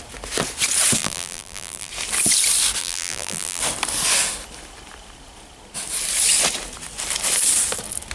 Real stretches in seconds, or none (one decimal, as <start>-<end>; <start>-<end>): 0.0-1.0; 1.9-2.8; 3.6-8.1